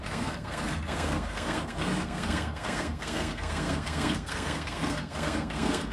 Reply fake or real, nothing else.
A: fake